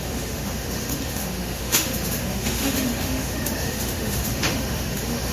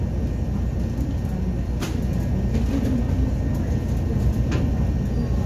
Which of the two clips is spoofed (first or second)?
first